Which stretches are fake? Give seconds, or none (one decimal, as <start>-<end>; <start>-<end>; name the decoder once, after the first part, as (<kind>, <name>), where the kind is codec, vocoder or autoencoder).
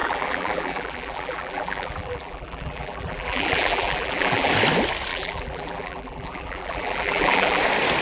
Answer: 0.0-4.5 (vocoder, BigVGAN v2); 5.1-7.6